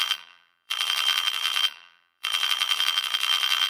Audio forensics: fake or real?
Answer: fake